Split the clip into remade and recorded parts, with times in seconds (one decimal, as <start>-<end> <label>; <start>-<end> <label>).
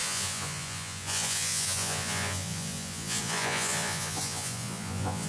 0.0-5.3 remade